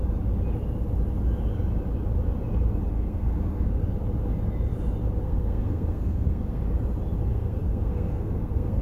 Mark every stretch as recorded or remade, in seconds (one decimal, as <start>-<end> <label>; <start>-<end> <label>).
0.0-2.9 recorded; 2.9-3.8 remade; 3.8-5.2 recorded; 5.2-6.6 remade; 6.6-7.3 recorded; 7.3-8.8 remade